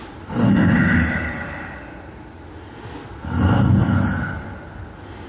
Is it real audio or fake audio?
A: real